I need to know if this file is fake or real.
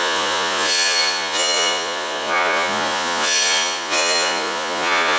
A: fake